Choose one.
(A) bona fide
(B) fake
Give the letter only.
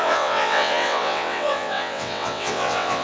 B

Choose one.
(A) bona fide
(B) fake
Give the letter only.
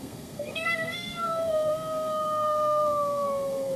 B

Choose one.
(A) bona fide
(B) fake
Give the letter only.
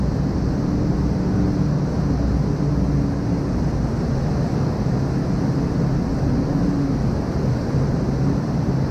A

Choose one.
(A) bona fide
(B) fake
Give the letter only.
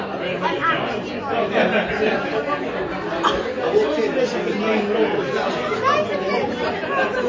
A